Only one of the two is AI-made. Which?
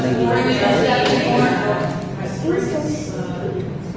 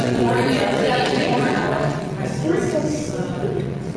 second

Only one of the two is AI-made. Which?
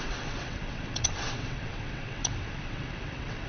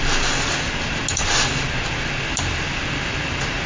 first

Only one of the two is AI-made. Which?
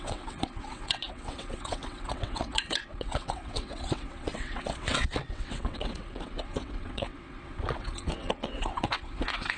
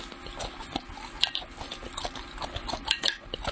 first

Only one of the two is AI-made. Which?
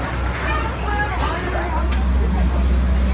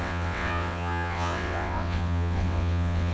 second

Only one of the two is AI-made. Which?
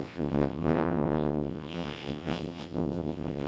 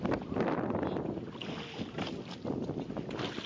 first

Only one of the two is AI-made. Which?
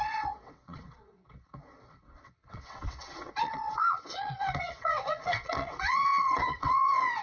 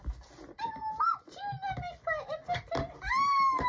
first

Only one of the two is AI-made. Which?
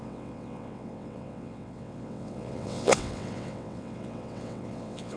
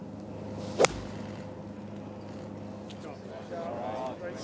first